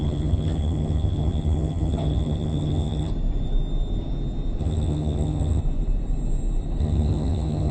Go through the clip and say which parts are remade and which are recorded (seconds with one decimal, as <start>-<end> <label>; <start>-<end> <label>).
0.0-3.1 remade; 3.1-4.6 recorded; 4.6-5.6 remade; 5.6-6.8 recorded; 6.8-7.7 remade